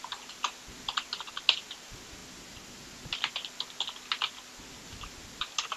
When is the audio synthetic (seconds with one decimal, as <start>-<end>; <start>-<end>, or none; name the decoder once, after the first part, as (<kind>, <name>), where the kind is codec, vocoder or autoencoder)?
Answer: none